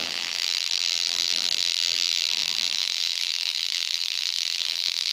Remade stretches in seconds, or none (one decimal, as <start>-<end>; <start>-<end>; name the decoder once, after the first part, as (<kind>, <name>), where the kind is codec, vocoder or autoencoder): 0.0-5.1 (vocoder, BigVGAN v2)